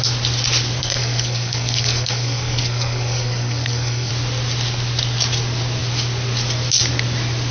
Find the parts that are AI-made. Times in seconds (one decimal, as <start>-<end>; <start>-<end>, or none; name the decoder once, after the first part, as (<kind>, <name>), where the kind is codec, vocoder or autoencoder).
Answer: 0.8-4.1 (codec, SNAC)